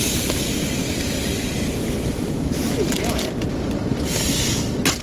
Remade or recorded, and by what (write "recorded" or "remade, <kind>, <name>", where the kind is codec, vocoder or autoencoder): recorded